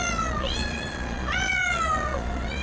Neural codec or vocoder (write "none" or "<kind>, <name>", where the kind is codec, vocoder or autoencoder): vocoder, Vocos